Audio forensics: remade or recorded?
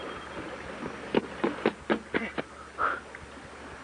recorded